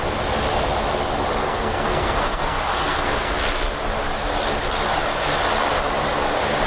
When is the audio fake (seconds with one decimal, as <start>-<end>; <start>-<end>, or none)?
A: 1.4-3.3

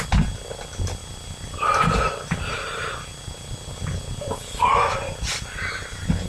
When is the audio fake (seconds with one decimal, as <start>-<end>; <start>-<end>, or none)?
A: none